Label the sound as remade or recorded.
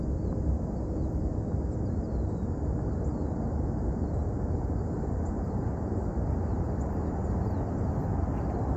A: recorded